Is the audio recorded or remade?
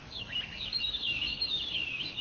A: remade